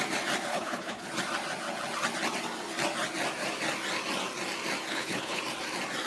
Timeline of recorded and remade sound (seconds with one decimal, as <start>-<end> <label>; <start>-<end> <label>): 0.0-0.5 recorded; 0.5-1.1 remade; 1.1-4.9 recorded; 4.9-5.4 remade; 5.4-6.1 recorded